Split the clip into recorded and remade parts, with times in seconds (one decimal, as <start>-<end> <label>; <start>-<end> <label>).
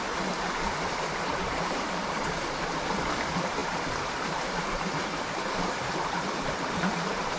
0.0-7.4 remade